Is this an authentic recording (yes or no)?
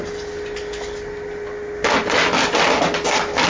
yes